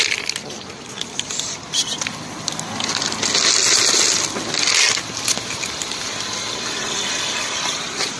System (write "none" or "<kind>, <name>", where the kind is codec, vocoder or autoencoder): none